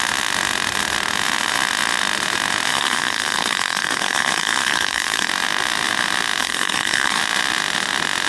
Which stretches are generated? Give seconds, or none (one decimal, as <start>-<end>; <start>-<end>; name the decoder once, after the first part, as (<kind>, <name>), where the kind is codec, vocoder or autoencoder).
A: 2.7-5.3 (codec, SNAC); 6.4-7.2